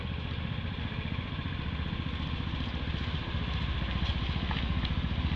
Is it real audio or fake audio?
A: real